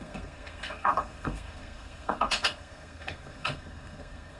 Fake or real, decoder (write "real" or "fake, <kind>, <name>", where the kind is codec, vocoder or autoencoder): fake, codec, SNAC